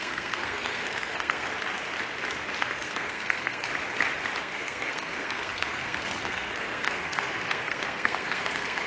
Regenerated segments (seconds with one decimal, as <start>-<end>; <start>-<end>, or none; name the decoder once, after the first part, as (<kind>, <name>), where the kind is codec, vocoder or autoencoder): 0.0-1.5 (codec, SNAC); 2.6-3.7; 4.4-8.9